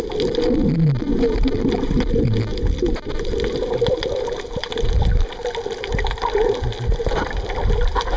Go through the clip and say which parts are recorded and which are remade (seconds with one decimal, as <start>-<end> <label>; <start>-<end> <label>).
0.0-8.2 recorded